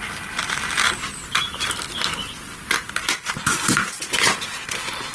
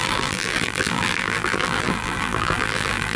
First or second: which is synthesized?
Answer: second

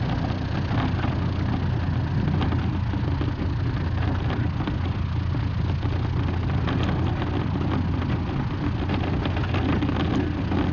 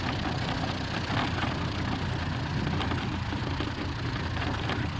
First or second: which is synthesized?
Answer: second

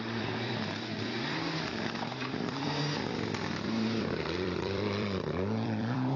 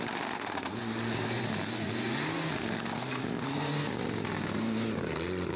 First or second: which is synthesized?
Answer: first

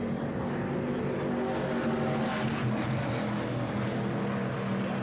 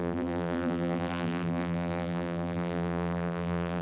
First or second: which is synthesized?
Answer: second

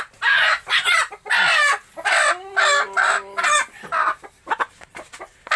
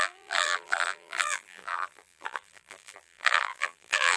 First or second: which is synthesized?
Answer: second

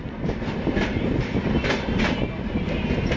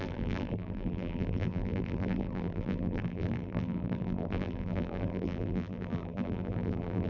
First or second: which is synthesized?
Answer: second